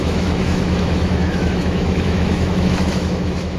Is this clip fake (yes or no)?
yes